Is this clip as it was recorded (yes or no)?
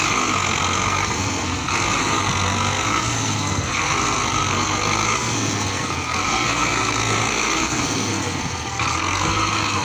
no